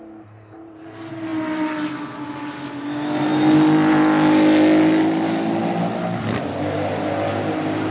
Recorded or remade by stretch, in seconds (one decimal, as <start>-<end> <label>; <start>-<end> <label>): 0.0-7.9 recorded